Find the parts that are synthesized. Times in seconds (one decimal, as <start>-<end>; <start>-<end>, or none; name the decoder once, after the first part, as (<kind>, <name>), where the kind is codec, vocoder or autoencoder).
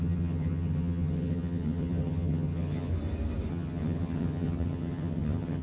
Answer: 0.0-2.9 (vocoder, HiFi-GAN); 3.5-5.6